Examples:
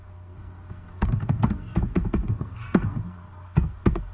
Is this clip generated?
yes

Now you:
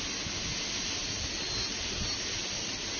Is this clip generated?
no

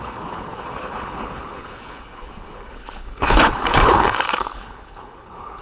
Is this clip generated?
yes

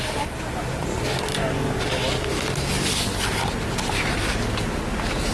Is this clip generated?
no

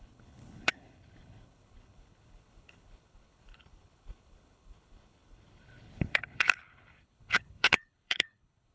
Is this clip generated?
yes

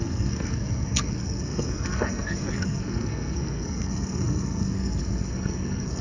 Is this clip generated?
yes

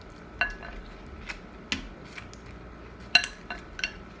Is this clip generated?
no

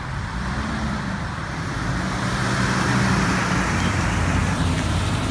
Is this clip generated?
yes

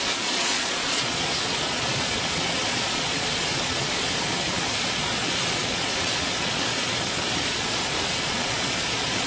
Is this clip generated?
yes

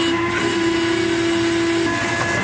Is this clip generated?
no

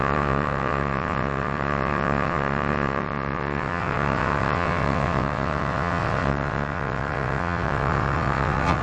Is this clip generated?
yes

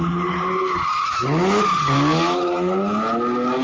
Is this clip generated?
no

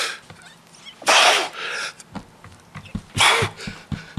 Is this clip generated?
no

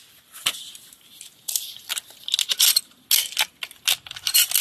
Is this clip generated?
no